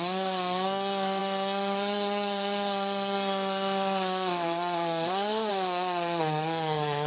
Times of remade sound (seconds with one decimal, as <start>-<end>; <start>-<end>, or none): 0.0-7.1